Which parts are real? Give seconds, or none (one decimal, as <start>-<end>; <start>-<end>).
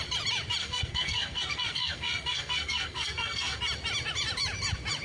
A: 0.0-0.6; 3.6-5.0